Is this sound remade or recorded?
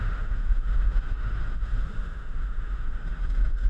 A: remade